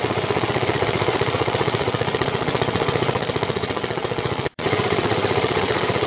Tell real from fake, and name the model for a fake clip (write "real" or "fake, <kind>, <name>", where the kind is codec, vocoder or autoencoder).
fake, vocoder, WaveNeXt